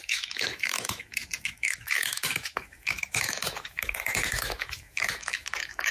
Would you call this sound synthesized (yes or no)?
yes